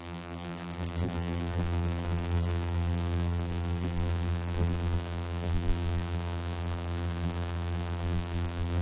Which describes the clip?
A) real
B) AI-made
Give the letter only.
B